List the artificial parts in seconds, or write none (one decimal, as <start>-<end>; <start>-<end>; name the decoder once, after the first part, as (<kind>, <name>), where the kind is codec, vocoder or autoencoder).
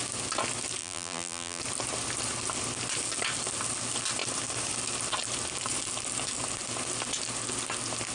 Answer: 0.8-1.6 (vocoder, BigVGAN v2)